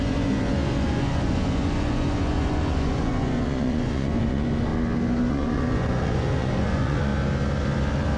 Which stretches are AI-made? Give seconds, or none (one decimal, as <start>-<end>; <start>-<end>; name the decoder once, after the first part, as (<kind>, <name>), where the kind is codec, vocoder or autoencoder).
0.0-4.7 (vocoder, Vocos); 5.3-7.1